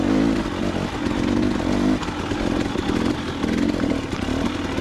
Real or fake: real